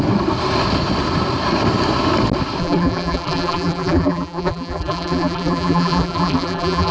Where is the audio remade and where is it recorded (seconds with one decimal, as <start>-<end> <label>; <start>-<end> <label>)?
0.0-2.6 recorded; 2.6-6.9 remade